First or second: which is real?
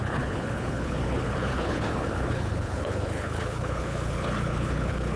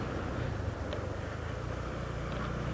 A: second